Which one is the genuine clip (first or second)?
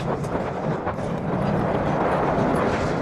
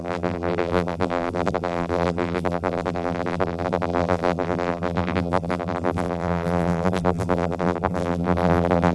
first